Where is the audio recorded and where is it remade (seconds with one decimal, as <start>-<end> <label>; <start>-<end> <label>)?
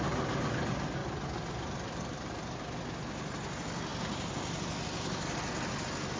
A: 0.0-6.2 recorded